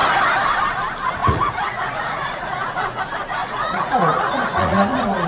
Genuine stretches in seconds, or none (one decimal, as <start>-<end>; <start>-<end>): 0.0-1.2; 3.0-3.4